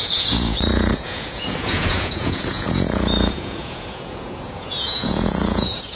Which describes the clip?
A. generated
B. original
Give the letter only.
A